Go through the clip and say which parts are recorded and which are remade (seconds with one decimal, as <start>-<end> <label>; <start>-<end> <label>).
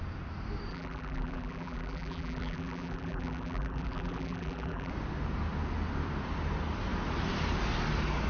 0.0-0.7 recorded; 0.7-4.9 remade; 4.9-8.3 recorded